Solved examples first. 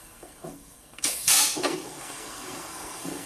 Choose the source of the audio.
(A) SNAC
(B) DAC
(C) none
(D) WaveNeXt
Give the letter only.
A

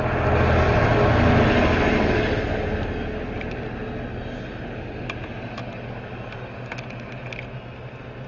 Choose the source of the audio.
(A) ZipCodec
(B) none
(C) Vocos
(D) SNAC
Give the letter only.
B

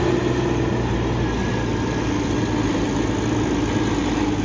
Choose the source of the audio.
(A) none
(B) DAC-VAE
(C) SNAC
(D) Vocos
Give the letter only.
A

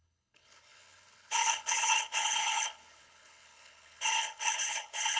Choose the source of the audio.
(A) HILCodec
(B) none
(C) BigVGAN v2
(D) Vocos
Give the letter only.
A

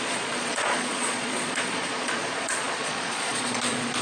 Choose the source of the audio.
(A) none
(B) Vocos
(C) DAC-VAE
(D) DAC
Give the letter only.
B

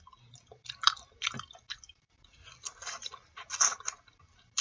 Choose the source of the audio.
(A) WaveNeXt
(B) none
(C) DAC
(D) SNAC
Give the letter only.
B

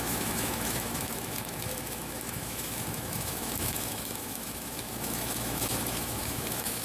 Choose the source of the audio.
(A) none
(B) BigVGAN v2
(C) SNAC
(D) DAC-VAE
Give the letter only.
D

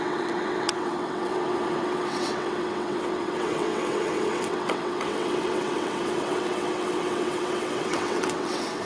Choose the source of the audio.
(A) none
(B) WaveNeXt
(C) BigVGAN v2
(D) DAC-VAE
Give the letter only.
B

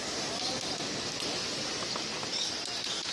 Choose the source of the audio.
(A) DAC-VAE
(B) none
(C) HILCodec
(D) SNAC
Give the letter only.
B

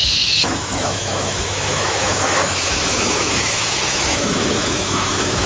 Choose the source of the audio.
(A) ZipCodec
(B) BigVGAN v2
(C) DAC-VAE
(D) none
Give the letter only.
C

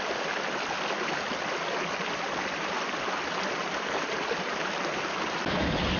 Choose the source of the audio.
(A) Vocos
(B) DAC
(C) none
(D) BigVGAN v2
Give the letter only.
C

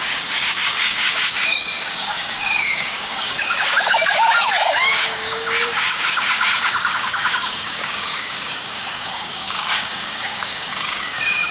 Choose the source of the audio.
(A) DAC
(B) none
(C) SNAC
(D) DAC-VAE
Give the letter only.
A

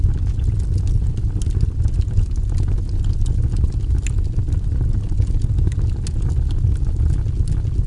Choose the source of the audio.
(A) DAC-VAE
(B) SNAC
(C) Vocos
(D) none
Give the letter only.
D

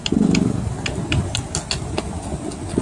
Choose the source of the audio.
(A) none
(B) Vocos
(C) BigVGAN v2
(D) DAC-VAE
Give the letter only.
A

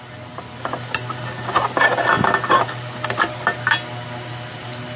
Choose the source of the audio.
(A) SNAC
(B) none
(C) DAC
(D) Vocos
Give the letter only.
B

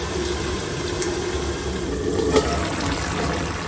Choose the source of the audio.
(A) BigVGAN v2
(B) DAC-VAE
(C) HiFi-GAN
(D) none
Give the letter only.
D